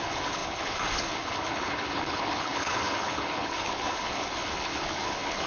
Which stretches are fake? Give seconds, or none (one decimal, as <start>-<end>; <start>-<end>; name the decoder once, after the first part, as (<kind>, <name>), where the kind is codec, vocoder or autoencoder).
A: 0.0-5.5 (codec, HILCodec)